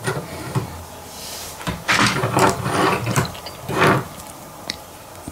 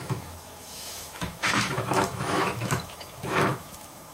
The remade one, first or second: second